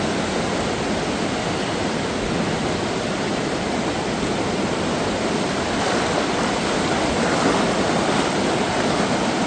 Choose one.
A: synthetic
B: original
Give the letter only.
B